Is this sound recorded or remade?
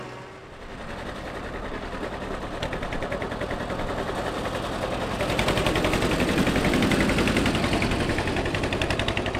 recorded